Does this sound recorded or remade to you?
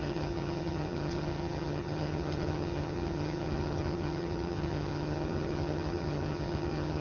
remade